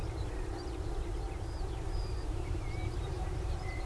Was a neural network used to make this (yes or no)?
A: yes